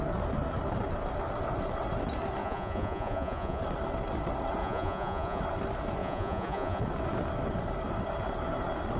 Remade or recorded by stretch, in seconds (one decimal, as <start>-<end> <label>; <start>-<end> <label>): 0.0-2.4 recorded; 2.4-3.6 remade; 3.6-4.6 recorded; 4.6-5.4 remade; 5.4-6.0 recorded; 6.0-6.8 remade; 6.8-9.0 recorded